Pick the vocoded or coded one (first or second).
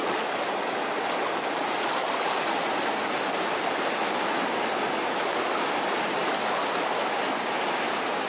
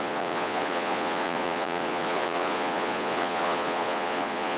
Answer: second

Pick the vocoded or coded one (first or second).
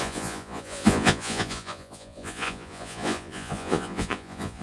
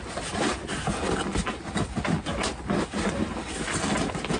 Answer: first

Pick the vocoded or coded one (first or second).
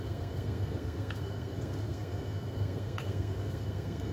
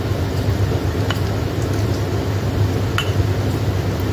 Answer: first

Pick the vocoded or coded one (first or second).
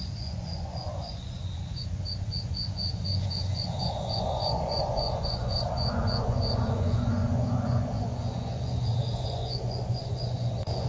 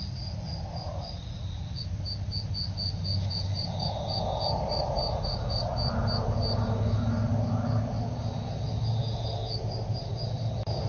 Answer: first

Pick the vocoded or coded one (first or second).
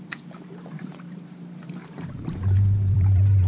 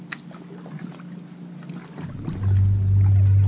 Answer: first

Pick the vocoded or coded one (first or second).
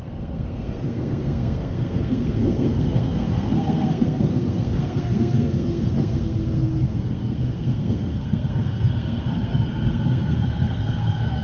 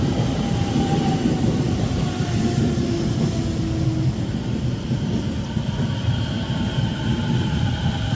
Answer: first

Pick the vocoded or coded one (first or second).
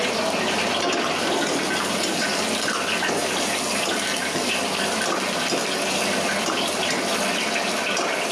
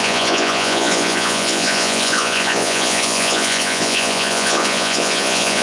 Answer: second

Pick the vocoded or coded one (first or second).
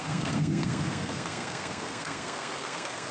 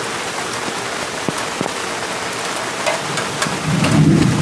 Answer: first